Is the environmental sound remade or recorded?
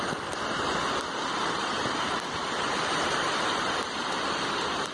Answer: remade